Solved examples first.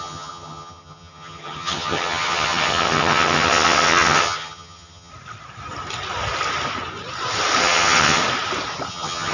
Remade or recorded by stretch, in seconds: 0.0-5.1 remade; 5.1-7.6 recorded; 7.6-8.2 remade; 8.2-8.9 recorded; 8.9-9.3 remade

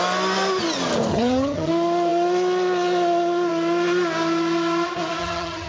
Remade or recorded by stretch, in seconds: 0.0-1.1 recorded; 1.1-1.7 remade; 1.7-5.2 recorded; 5.2-5.7 remade

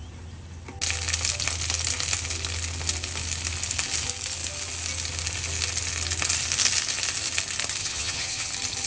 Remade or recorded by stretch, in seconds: 0.0-7.8 recorded; 7.8-8.5 remade; 8.5-8.9 recorded

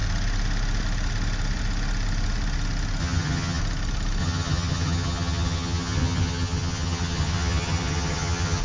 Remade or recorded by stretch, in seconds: 0.0-3.0 recorded; 3.0-3.6 remade; 3.6-4.2 recorded; 4.2-8.6 remade

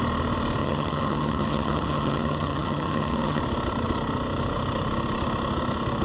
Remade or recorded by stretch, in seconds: 0.0-0.6 recorded; 0.6-3.4 remade; 3.4-6.0 recorded

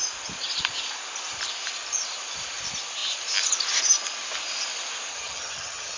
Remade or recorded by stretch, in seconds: 0.0-5.1 recorded; 5.1-6.0 remade

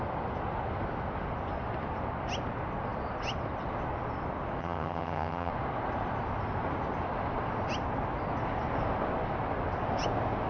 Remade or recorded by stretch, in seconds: 0.0-4.6 recorded; 4.6-5.5 remade; 5.5-10.5 recorded